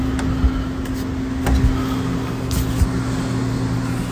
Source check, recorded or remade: recorded